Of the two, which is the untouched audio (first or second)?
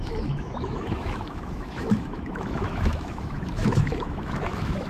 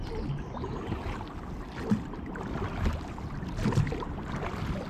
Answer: second